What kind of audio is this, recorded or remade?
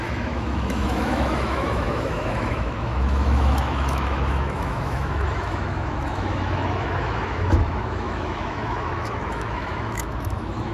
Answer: remade